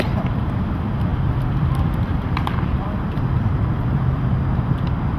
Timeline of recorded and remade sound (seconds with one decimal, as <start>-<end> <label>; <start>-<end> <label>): 0.0-1.1 recorded; 1.1-4.2 remade; 4.2-5.2 recorded